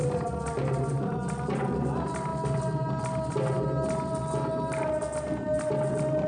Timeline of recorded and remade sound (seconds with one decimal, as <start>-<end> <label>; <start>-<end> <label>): 0.0-6.3 recorded